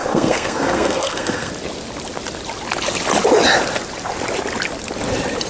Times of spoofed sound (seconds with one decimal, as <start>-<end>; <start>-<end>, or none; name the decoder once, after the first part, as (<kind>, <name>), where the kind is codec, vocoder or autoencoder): 0.0-1.5 (codec, SNAC)